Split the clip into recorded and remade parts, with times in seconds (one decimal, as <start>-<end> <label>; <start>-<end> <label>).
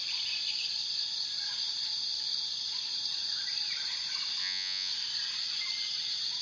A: 0.0-4.4 recorded; 4.4-4.9 remade; 4.9-6.4 recorded